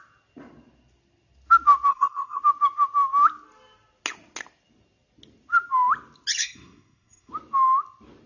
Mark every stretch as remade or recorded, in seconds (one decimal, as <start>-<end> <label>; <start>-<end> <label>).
0.0-1.9 recorded; 1.9-2.4 remade; 2.4-6.4 recorded; 6.4-7.3 remade; 7.3-8.3 recorded